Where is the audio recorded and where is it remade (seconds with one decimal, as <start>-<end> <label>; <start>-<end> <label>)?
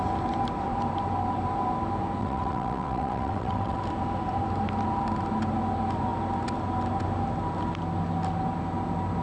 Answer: 0.0-2.2 recorded; 2.2-3.8 remade; 3.8-9.2 recorded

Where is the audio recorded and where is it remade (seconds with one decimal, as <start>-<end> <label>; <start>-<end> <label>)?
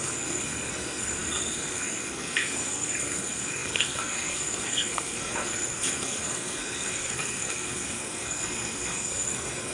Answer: 0.0-9.7 remade